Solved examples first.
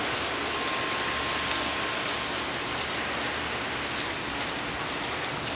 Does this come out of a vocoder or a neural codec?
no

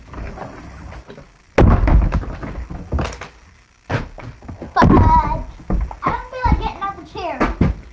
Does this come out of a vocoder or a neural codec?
no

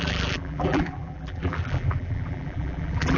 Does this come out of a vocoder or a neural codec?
yes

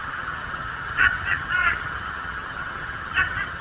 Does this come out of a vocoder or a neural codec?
yes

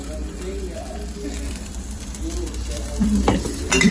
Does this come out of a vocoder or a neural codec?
yes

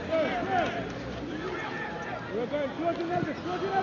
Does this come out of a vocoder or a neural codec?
no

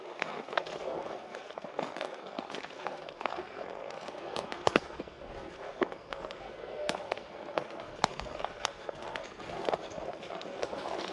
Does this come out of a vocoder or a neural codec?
yes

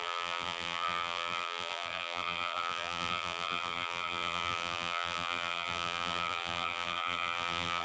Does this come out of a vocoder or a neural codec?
yes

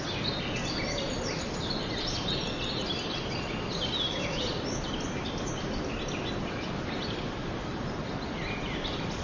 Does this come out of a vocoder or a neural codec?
no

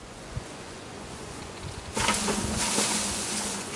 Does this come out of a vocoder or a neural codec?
yes